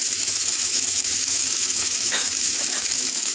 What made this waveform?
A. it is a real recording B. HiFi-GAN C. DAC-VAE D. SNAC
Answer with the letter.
C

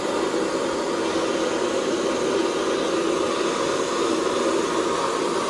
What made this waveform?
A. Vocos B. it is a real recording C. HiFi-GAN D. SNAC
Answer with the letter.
B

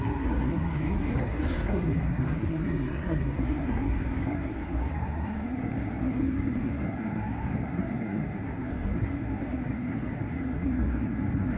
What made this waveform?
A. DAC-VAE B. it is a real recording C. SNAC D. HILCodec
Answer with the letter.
C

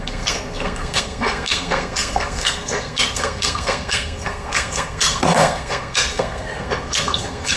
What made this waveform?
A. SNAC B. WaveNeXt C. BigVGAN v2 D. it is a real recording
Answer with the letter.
A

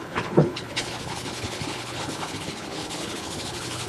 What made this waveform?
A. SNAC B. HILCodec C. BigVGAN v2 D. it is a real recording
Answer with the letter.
B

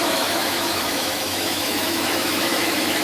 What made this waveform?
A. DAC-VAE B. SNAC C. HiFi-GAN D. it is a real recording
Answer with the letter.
A